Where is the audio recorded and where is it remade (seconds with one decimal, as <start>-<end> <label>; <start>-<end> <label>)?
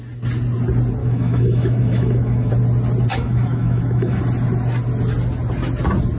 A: 0.0-1.0 recorded; 1.0-2.5 remade; 2.5-3.1 recorded; 3.1-4.2 remade; 4.2-6.2 recorded